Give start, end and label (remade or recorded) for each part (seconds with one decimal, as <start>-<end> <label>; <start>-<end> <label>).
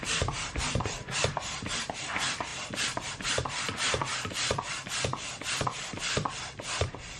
0.0-7.2 remade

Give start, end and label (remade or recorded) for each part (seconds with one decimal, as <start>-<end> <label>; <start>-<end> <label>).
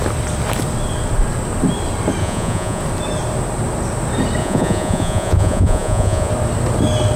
0.0-2.2 recorded; 2.2-2.8 remade; 2.8-4.4 recorded; 4.4-6.3 remade; 6.3-7.2 recorded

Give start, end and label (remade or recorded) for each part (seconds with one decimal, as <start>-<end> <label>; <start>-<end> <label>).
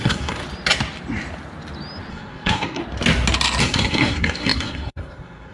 0.0-0.4 remade; 0.4-2.1 recorded; 2.1-2.8 remade; 2.8-3.6 recorded; 3.6-5.5 remade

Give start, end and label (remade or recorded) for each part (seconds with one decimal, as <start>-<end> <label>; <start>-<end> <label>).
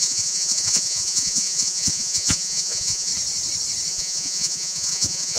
0.0-3.1 remade; 3.1-3.9 recorded; 3.9-5.4 remade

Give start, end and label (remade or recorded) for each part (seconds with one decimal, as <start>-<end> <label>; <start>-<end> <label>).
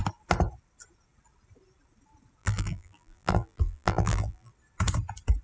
0.0-2.4 recorded; 2.4-4.5 remade; 4.5-5.4 recorded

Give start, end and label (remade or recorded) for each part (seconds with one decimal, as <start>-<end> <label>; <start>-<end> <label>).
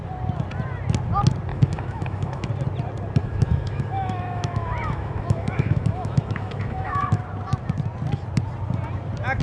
0.0-1.5 recorded; 1.5-2.5 remade; 2.5-3.2 recorded; 3.2-7.2 remade; 7.2-9.4 recorded